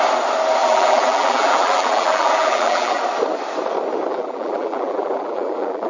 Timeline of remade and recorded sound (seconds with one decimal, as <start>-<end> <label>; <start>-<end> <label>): 0.0-0.6 recorded; 0.6-3.0 remade; 3.0-4.1 recorded; 4.1-5.9 remade